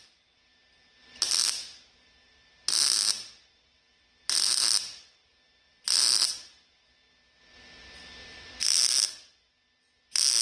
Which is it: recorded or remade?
recorded